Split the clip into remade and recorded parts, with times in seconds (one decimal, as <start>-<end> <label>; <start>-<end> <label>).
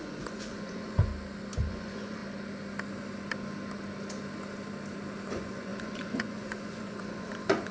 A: 0.0-1.1 remade; 1.1-1.7 recorded; 1.7-2.2 remade; 2.2-5.3 recorded; 5.3-7.7 remade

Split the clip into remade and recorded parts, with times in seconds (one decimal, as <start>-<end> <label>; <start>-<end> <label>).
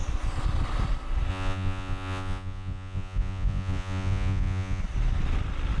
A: 0.0-1.3 recorded; 1.3-4.8 remade; 4.8-5.8 recorded